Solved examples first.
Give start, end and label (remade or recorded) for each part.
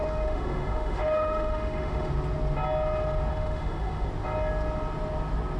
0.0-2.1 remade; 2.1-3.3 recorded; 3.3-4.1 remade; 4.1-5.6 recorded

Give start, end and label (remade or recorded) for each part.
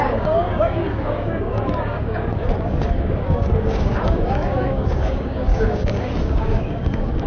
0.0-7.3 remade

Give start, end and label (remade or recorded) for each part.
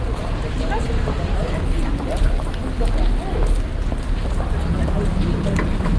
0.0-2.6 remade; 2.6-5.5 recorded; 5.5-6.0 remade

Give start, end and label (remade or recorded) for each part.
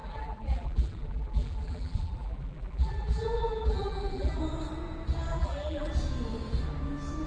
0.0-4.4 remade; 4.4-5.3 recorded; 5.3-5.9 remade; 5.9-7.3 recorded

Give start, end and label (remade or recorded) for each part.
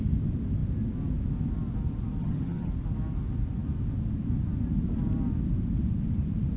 0.0-2.2 recorded; 2.2-2.7 remade; 2.7-6.6 recorded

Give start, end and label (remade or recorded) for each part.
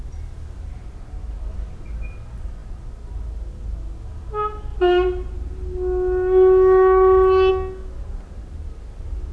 0.0-9.3 recorded